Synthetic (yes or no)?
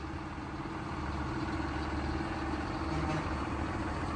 no